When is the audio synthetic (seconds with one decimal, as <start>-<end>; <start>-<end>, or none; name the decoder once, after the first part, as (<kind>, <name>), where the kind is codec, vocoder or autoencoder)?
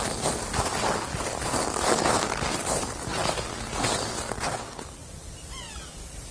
none